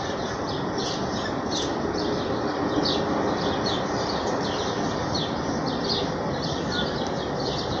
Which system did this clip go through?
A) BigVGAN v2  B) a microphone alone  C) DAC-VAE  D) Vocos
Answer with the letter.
B